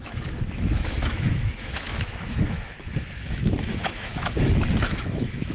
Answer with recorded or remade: remade